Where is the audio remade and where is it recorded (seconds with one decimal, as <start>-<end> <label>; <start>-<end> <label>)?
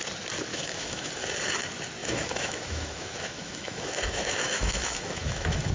0.0-0.5 recorded; 0.5-1.1 remade; 1.1-2.0 recorded; 2.0-5.7 remade